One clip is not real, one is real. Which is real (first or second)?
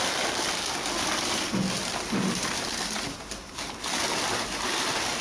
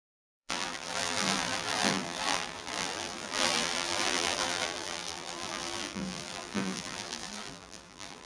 first